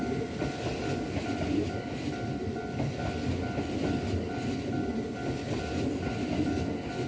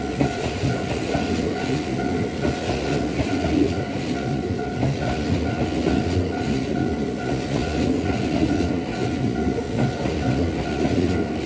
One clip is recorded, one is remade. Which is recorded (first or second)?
first